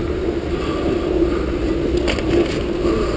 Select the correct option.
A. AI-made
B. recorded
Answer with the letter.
B